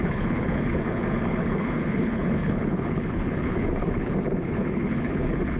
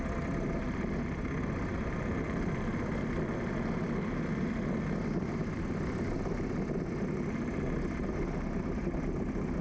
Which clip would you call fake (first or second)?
first